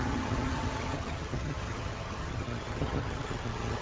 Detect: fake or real fake